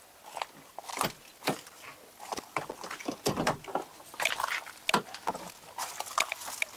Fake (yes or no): no